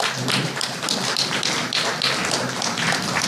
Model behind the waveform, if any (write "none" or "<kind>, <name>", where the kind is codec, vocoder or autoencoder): none